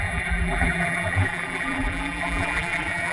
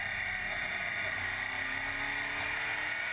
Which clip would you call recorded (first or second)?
second